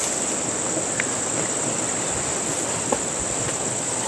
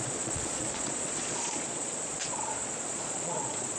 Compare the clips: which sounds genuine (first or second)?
first